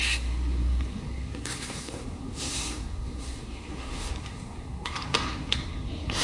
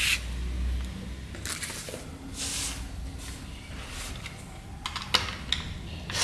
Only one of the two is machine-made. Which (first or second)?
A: first